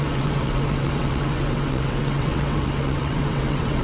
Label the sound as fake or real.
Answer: fake